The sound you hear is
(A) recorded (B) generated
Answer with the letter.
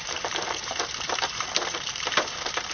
B